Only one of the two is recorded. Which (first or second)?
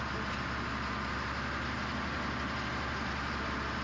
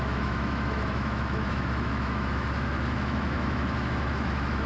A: first